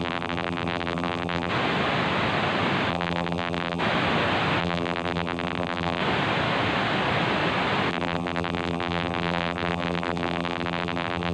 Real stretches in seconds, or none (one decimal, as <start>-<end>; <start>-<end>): 1.5-2.9; 3.8-4.6; 6.0-7.9